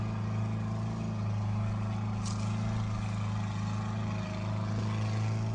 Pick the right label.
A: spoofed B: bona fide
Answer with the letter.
B